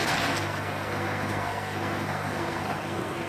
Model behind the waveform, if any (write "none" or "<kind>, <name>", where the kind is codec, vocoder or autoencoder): codec, SNAC